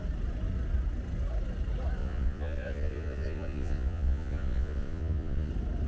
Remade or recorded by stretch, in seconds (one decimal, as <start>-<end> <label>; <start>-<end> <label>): 0.0-2.0 recorded; 2.0-5.5 remade; 5.5-5.9 recorded